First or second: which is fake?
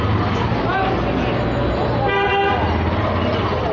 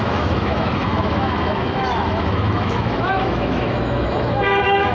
second